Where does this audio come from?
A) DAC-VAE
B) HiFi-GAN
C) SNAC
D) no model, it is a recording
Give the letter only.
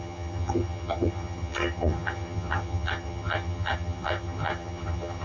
B